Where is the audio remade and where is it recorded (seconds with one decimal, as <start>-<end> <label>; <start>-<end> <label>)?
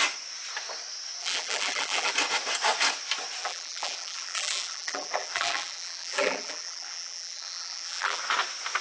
0.0-1.2 recorded; 1.2-2.1 remade; 2.1-3.4 recorded; 3.4-8.2 remade; 8.2-8.8 recorded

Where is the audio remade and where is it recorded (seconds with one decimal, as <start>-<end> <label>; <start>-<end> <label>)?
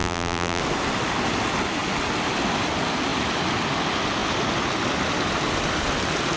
0.0-0.6 remade; 0.6-6.4 recorded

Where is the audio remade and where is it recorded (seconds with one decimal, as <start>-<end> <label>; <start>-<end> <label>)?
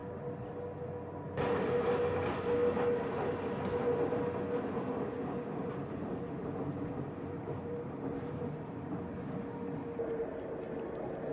0.0-6.4 recorded; 6.4-9.3 remade; 9.3-11.3 recorded